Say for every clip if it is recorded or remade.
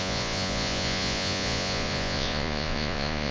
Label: remade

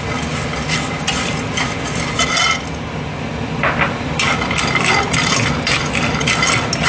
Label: recorded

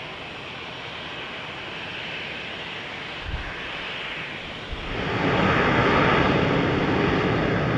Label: recorded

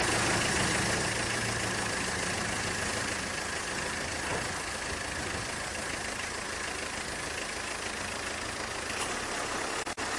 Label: recorded